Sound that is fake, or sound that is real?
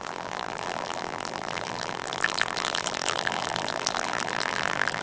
fake